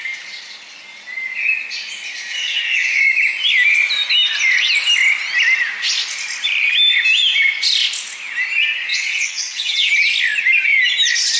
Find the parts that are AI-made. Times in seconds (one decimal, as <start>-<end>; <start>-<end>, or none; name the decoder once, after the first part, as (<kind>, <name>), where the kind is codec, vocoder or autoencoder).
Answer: 2.3-3.0 (vocoder, WaveNeXt); 8.9-9.9